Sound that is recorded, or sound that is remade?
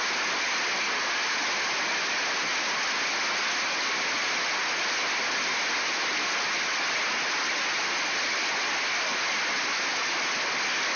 recorded